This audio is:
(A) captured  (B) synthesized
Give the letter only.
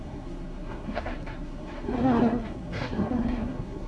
B